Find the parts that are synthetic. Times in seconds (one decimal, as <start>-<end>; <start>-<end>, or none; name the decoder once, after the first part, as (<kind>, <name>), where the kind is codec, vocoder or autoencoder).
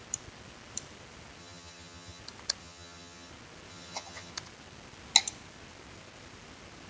1.4-2.2 (vocoder, HiFi-GAN); 2.6-3.3; 3.7-4.3